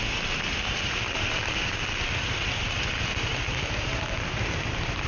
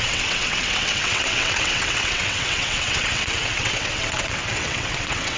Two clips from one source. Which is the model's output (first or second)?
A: second